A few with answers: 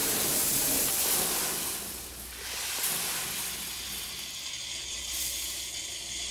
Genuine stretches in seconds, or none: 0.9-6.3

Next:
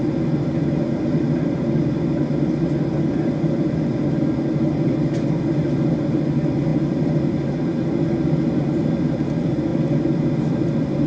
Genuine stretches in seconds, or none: 0.0-11.1

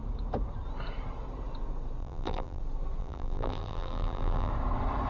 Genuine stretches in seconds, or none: 0.0-2.0; 2.6-3.0; 4.5-5.1

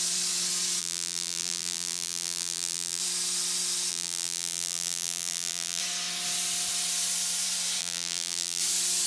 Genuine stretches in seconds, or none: 0.0-0.8; 3.0-3.9; 5.8-7.8; 8.6-9.1